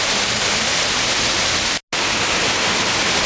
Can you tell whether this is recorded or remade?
recorded